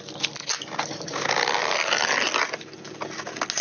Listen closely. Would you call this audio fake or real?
real